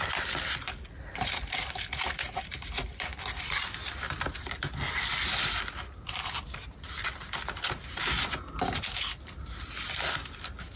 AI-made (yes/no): no